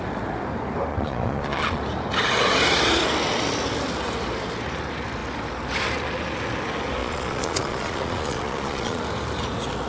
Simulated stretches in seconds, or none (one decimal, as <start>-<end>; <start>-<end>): 0.9-1.8; 7.0-9.0